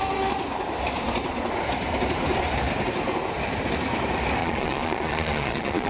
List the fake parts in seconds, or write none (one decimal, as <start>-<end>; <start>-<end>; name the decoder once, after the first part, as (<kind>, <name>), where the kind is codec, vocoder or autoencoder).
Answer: 4.4-5.9 (vocoder, Vocos)